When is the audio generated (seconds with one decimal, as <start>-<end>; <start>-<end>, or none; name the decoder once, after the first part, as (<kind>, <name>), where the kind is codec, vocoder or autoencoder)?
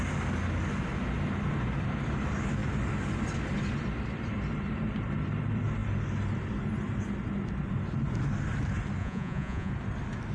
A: 9.0-9.7 (vocoder, Vocos)